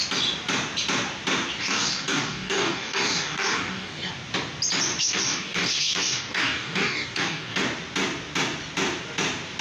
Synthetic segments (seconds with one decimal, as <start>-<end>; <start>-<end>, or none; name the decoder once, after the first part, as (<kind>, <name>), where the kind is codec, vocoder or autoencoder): 1.6-4.1 (codec, DAC); 5.0-7.6